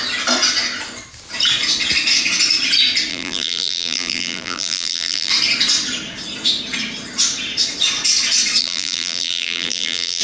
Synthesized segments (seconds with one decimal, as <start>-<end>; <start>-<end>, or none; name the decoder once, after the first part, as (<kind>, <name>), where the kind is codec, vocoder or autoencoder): 3.1-5.3 (vocoder, BigVGAN v2); 8.6-10.2